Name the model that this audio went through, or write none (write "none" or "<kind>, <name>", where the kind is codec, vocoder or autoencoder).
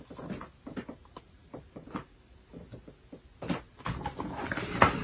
none